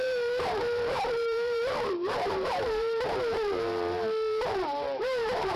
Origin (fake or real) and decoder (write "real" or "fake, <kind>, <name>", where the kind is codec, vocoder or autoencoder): fake, vocoder, BigVGAN v2